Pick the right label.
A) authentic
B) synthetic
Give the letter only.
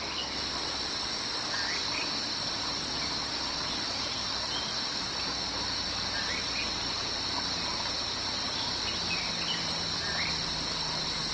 A